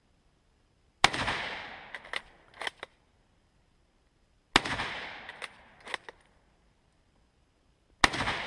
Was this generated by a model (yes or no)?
no